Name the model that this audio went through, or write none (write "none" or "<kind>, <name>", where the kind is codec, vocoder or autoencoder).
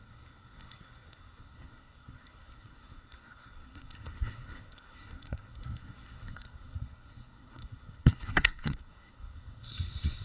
codec, SNAC